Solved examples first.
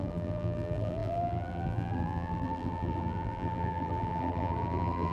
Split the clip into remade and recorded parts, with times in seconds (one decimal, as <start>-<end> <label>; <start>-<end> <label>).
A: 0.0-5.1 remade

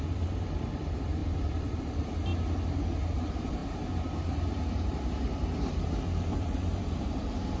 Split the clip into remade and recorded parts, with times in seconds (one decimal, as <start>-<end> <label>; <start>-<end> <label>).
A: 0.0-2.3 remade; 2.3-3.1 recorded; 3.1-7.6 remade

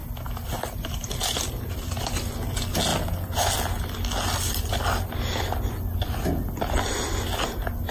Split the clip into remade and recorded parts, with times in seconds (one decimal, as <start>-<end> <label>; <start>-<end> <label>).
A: 0.0-7.9 recorded

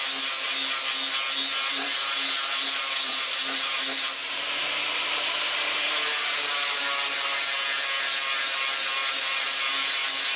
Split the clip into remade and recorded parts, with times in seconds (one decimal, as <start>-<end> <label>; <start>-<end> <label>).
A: 0.0-1.6 recorded; 1.6-6.8 remade; 6.8-9.0 recorded; 9.0-9.6 remade; 9.6-10.4 recorded